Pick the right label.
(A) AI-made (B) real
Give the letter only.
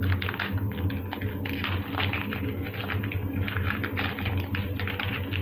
B